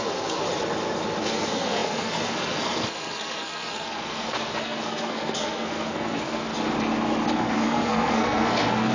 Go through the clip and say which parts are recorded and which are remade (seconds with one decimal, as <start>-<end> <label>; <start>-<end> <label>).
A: 0.0-0.4 remade; 0.4-1.2 recorded; 1.2-6.5 remade; 6.5-7.3 recorded; 7.3-8.9 remade